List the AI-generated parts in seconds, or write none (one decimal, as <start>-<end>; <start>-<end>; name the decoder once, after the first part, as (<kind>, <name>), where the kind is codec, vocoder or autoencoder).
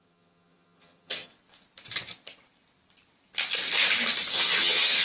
0.0-1.3 (vocoder, HiFi-GAN); 4.3-5.0